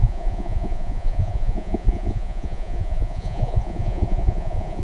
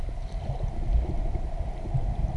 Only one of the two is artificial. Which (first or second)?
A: first